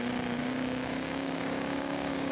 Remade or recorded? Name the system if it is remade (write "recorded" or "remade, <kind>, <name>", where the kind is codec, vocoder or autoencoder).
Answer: remade, codec, DAC